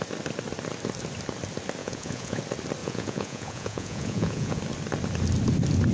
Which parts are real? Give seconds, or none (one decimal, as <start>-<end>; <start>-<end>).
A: 0.0-1.8; 2.4-2.8; 4.6-5.9